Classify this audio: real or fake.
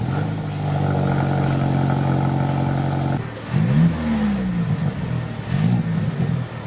real